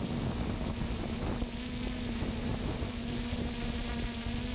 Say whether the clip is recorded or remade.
recorded